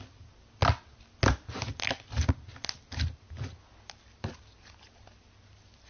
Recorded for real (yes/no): yes